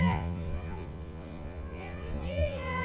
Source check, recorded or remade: remade